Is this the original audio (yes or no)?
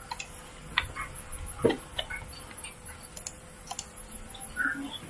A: yes